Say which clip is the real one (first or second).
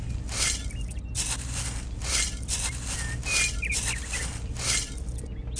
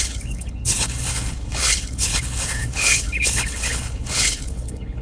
first